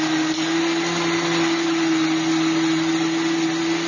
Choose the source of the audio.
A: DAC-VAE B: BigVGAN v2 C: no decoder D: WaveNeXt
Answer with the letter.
C